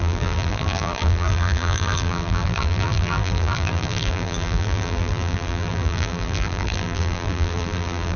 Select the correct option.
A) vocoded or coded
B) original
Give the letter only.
A